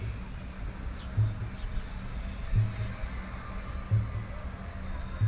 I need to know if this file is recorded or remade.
recorded